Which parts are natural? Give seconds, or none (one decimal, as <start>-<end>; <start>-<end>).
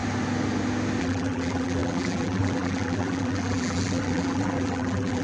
0.0-1.0